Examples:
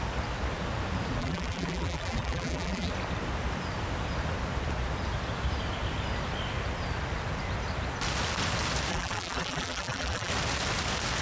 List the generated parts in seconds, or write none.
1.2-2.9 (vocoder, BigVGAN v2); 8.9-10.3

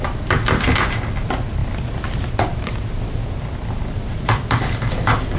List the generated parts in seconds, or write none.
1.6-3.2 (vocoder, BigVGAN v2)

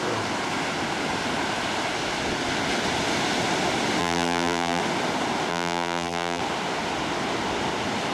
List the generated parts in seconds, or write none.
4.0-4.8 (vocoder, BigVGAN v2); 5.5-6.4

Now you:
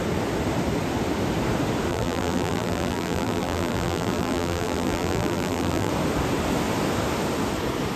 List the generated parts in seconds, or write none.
1.9-5.9 (vocoder, BigVGAN v2)

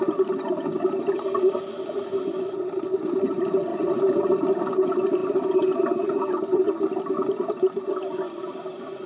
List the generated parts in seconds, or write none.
none

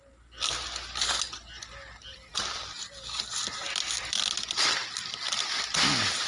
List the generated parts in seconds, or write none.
none